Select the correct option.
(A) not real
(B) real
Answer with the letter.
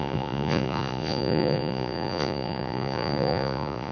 A